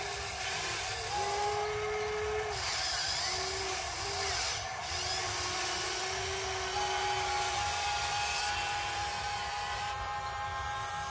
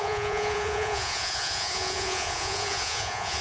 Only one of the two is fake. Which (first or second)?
second